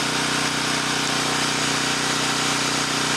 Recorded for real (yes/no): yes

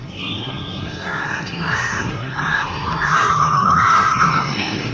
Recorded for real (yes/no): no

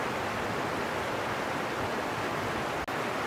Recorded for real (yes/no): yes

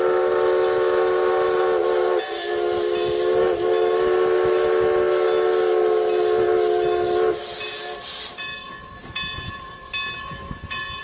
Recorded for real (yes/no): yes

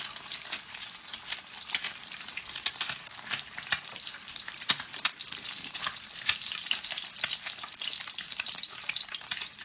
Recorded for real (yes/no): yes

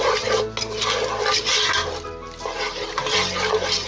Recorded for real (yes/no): yes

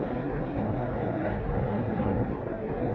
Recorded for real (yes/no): no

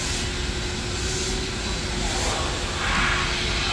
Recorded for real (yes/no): yes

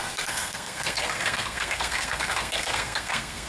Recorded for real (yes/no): no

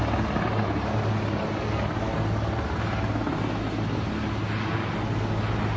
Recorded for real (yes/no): yes